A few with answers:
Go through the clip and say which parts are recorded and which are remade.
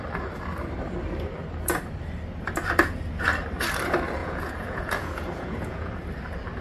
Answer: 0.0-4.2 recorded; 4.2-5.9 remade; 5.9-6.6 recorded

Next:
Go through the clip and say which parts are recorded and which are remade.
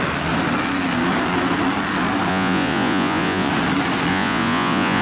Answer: 0.0-2.3 recorded; 2.3-3.5 remade; 3.5-4.1 recorded; 4.1-5.0 remade